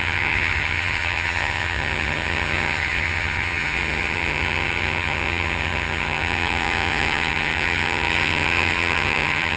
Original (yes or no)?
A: no